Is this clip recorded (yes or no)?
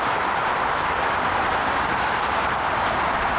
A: no